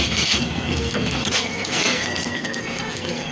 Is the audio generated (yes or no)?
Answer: yes